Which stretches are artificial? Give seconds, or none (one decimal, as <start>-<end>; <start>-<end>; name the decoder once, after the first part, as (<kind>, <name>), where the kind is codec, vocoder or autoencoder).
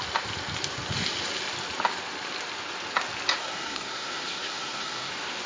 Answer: 3.4-5.1 (codec, SNAC)